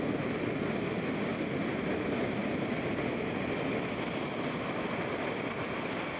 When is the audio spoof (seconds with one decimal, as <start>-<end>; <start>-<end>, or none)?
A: none